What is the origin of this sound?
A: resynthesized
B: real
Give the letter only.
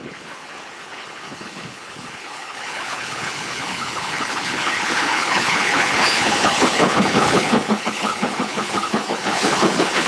A